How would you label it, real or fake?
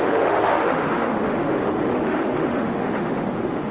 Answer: fake